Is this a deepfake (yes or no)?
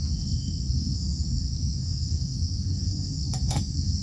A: yes